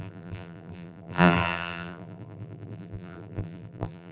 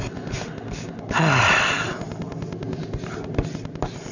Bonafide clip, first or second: second